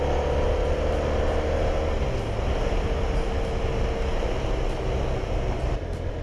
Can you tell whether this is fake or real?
real